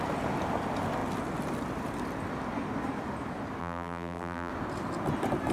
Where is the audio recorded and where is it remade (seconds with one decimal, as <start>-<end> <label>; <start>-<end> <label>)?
0.0-3.6 recorded; 3.6-4.5 remade; 4.5-5.5 recorded